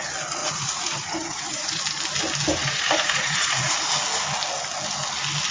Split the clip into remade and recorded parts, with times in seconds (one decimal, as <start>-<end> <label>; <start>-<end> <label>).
0.0-0.4 recorded; 0.4-1.8 remade; 1.8-2.5 recorded; 2.5-3.7 remade; 3.7-5.5 recorded